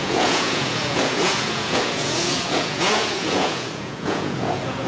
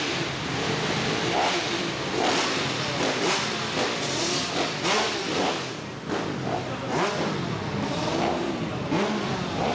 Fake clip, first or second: first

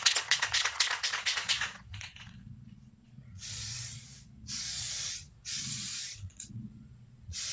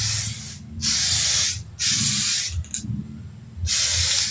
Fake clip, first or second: first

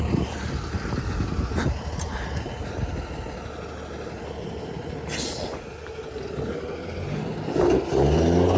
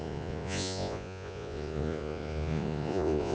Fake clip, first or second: second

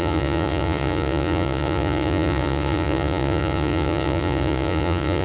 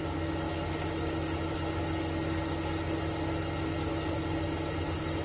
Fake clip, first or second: first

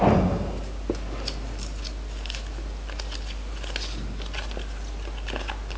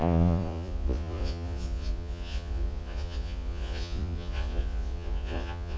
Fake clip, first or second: second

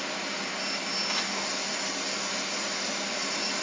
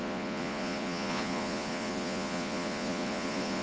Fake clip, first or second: second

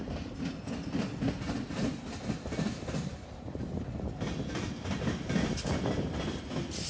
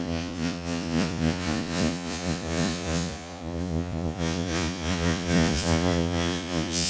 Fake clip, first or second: second